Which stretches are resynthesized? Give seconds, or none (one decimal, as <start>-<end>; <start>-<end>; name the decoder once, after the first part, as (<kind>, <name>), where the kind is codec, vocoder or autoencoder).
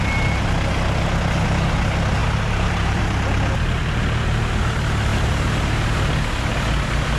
2.2-3.0 (vocoder, BigVGAN v2); 5.1-6.1